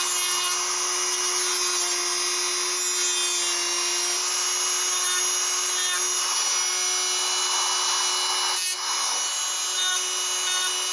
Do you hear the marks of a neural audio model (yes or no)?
no